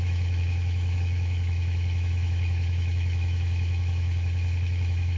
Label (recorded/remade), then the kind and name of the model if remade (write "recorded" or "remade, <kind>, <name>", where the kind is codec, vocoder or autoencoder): remade, autoencoder, DAC-VAE